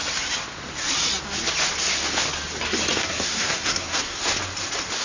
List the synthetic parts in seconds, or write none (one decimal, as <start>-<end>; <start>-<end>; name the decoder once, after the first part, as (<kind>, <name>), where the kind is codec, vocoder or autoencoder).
3.0-4.2 (codec, SNAC)